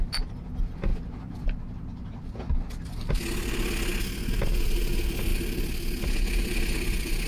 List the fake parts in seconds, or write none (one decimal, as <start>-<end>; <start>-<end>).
none